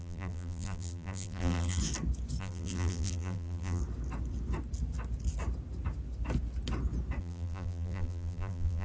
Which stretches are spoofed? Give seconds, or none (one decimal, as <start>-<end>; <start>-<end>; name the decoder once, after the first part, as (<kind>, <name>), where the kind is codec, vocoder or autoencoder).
0.0-1.8 (vocoder, BigVGAN v2); 2.4-3.8; 7.2-8.8